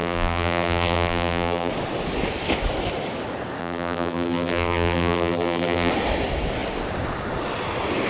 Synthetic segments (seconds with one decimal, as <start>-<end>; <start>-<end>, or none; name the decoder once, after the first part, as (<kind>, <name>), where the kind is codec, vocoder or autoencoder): 0.0-1.7 (vocoder, BigVGAN v2); 3.6-5.9